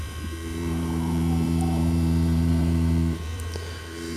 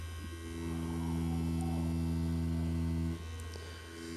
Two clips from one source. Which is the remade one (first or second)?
first